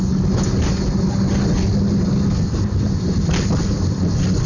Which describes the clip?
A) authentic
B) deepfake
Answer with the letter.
A